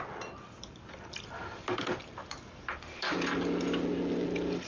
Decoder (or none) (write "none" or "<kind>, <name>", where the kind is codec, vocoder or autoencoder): none